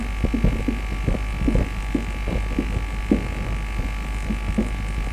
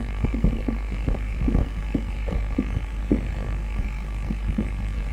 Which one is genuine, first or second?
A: first